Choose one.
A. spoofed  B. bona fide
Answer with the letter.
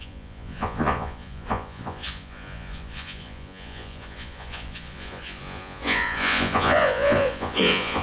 A